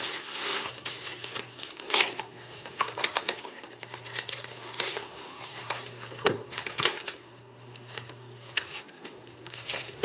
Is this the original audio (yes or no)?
no